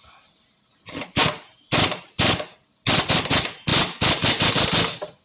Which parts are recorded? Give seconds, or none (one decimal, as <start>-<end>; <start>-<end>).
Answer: 0.0-5.2